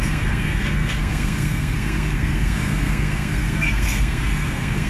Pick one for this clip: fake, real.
fake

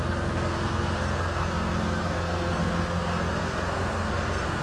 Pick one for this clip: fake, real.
fake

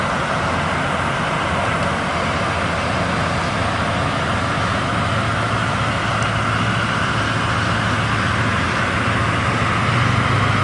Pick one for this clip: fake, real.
real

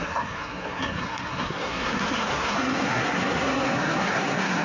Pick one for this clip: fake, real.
fake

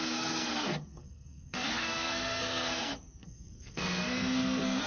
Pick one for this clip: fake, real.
fake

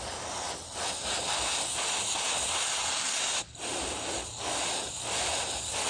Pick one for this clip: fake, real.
real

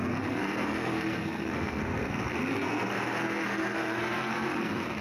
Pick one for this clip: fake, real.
fake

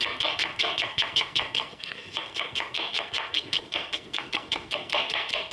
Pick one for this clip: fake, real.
fake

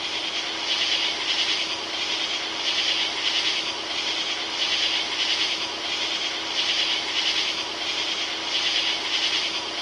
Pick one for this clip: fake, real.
real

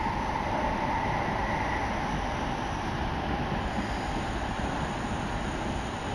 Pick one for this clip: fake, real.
real